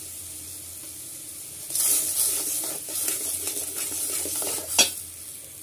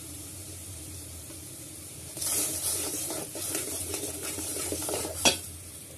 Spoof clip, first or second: second